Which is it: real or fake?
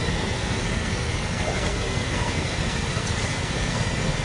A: fake